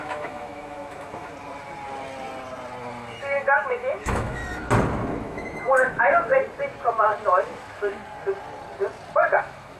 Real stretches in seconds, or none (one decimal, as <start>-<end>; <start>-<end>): 1.3-3.2; 4.4-5.2; 6.3-7.4; 8.0-9.4